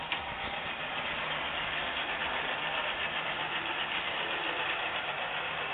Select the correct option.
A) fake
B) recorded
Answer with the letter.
B